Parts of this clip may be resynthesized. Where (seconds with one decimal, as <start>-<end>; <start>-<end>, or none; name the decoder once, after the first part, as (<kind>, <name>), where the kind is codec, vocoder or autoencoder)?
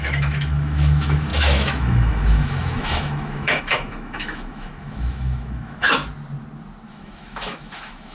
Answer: 0.0-6.0 (autoencoder, DAC-VAE); 6.9-8.1